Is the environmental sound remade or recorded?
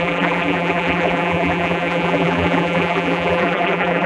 remade